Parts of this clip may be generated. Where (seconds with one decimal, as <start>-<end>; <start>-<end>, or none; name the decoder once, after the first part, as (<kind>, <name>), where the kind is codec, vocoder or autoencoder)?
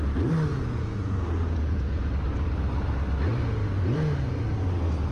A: 0.5-2.1 (vocoder, Vocos)